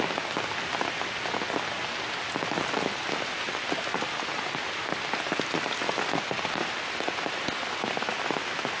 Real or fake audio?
real